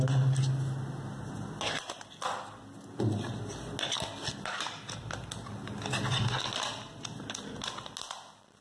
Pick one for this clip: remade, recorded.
recorded